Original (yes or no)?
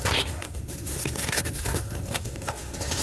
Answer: no